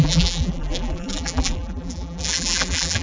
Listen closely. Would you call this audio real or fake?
fake